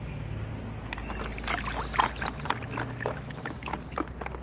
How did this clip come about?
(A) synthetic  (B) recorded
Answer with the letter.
B